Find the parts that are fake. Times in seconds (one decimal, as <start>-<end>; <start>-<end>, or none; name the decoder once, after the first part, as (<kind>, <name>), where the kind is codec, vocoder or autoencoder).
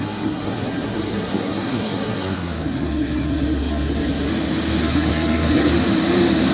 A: 0.0-4.3 (codec, SNAC); 4.8-5.7